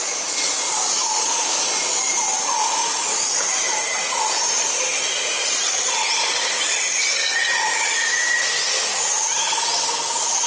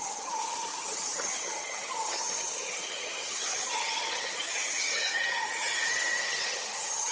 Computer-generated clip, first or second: second